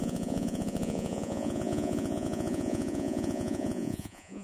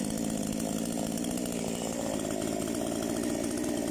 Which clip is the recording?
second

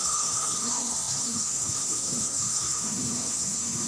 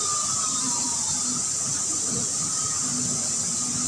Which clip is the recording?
second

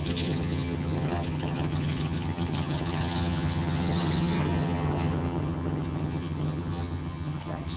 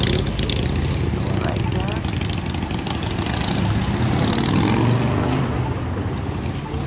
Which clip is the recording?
second